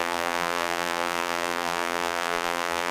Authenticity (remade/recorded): remade